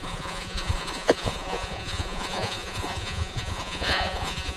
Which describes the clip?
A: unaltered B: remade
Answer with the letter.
B